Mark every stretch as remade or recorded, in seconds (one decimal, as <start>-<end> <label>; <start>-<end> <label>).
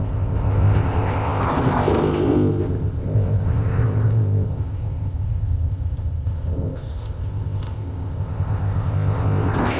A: 0.0-9.8 remade